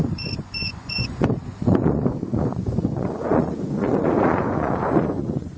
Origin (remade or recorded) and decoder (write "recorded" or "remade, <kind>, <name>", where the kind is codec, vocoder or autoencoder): remade, vocoder, Vocos